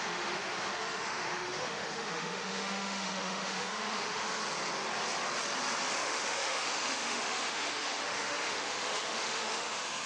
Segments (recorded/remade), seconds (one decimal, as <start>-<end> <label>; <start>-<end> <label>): 0.0-4.4 remade; 4.4-5.9 recorded; 5.9-10.1 remade